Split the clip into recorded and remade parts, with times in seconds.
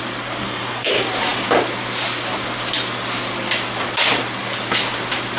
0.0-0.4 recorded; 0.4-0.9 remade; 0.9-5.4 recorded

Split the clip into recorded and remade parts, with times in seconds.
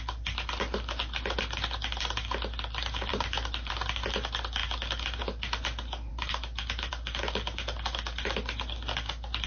0.0-9.5 recorded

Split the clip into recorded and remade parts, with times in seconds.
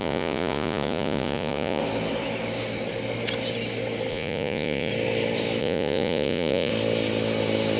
0.0-1.8 remade; 1.8-4.1 recorded; 4.1-4.9 remade; 4.9-5.6 recorded; 5.6-6.7 remade; 6.7-7.8 recorded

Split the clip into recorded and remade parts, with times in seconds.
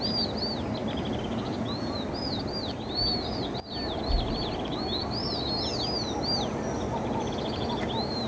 0.0-8.3 recorded